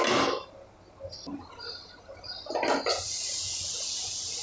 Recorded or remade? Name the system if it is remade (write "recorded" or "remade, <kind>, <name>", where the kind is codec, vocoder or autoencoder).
recorded